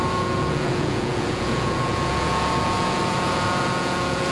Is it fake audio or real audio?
fake